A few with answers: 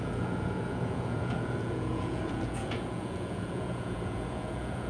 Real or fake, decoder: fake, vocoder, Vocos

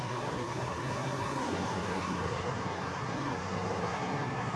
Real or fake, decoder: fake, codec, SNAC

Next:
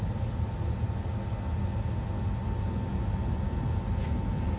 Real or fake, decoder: real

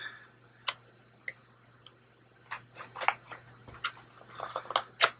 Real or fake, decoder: real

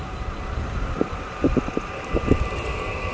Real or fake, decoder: fake, vocoder, BigVGAN v2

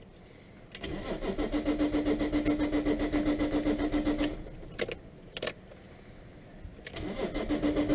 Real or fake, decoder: real